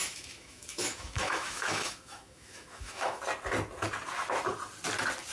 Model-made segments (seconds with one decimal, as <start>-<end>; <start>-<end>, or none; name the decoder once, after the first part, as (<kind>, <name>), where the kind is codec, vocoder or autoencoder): 0.0-3.2 (autoencoder, DAC-VAE)

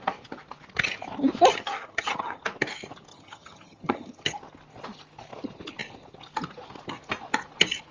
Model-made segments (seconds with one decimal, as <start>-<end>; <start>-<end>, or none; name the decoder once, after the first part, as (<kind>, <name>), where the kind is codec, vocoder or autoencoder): 1.5-2.4 (vocoder, HiFi-GAN); 3.1-4.4

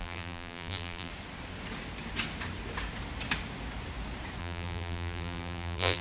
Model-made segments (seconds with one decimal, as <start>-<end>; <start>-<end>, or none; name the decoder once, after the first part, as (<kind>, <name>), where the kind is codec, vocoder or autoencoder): 0.0-1.1 (vocoder, BigVGAN v2); 4.4-6.0